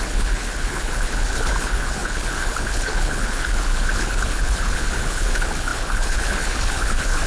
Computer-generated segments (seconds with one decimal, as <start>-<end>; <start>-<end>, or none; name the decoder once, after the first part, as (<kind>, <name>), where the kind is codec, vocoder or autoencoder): 0.0-7.3 (codec, HILCodec)